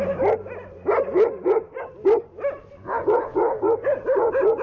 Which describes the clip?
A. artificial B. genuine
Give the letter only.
B